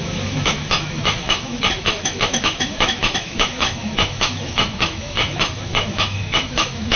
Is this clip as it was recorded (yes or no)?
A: no